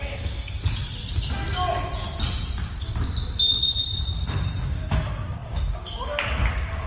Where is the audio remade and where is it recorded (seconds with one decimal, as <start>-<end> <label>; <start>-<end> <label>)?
0.0-0.6 remade; 0.6-4.7 recorded; 4.7-6.9 remade